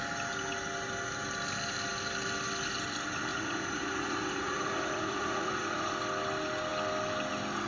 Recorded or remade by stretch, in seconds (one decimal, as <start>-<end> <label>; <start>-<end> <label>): 0.0-3.3 recorded; 3.3-5.9 remade; 5.9-7.7 recorded